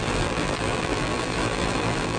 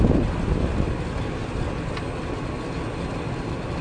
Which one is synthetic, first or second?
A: first